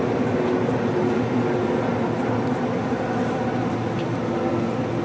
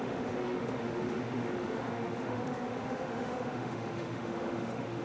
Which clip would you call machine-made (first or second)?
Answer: second